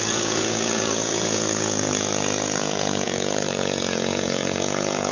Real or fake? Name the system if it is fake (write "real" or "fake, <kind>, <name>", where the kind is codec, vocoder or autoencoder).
fake, vocoder, Vocos